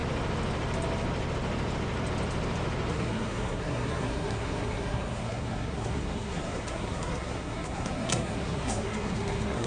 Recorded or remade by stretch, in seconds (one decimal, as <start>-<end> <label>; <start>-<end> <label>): 0.0-2.9 recorded; 2.9-9.7 remade